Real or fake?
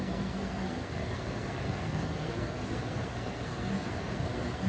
fake